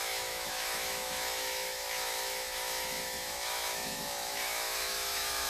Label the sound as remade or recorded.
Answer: remade